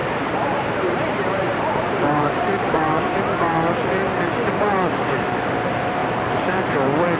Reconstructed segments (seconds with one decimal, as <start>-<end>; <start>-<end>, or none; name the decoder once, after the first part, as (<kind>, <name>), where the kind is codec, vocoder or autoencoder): 0.0-3.0 (vocoder, BigVGAN v2); 6.0-6.7